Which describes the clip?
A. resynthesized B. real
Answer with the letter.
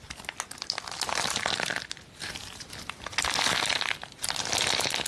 B